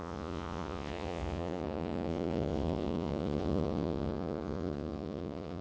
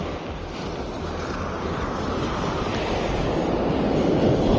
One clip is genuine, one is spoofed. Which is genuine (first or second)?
second